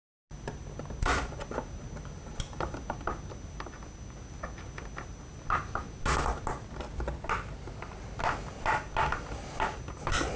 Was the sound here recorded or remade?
recorded